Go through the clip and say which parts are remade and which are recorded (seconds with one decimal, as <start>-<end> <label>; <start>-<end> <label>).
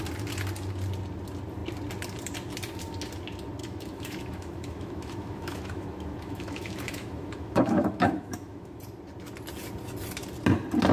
0.0-3.6 recorded; 3.6-8.8 remade; 8.8-10.9 recorded